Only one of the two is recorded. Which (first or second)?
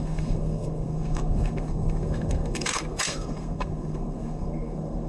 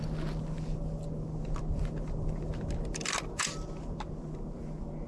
second